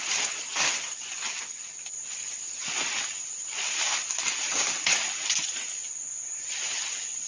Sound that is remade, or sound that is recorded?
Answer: recorded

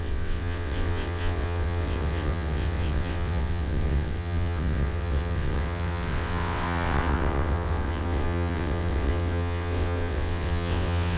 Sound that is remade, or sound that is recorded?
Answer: remade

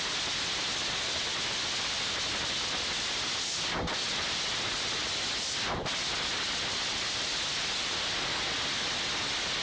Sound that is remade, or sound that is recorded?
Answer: recorded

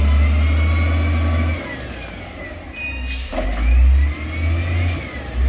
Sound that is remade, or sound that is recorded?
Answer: recorded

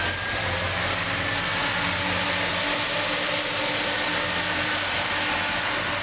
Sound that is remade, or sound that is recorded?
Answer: recorded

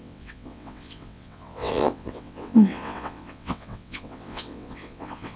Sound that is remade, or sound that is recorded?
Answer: remade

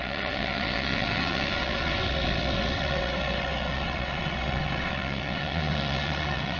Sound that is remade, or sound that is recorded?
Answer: remade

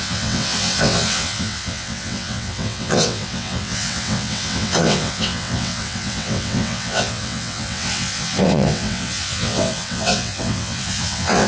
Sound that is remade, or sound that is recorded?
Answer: remade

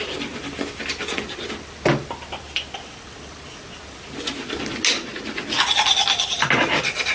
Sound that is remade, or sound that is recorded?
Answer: recorded